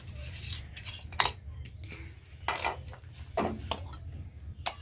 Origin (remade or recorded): recorded